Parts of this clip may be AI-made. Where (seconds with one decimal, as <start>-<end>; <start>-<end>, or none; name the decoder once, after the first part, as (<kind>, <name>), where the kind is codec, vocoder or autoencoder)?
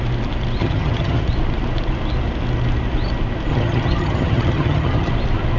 0.6-1.2 (vocoder, HiFi-GAN); 3.5-5.1